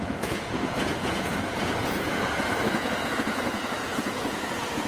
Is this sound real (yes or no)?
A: no